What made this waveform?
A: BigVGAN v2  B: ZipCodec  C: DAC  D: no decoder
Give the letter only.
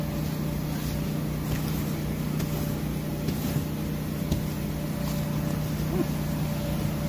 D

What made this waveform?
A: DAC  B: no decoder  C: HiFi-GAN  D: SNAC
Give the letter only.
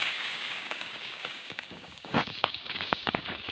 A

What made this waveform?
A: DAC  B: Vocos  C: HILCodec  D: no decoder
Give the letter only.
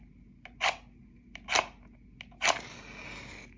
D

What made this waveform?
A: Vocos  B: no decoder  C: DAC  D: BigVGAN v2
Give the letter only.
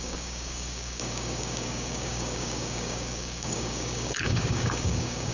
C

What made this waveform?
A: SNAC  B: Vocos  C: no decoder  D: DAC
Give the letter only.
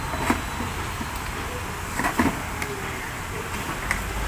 C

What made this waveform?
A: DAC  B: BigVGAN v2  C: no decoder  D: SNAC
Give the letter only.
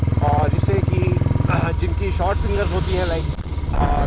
C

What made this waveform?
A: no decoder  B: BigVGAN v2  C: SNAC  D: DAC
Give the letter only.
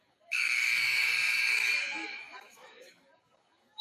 D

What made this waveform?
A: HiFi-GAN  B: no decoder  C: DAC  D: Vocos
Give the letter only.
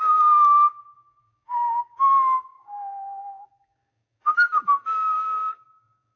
C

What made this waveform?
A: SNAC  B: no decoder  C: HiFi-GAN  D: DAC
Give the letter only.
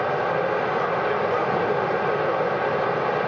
B